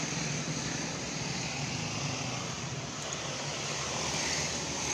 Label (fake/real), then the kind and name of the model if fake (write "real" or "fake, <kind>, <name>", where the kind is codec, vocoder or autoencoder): real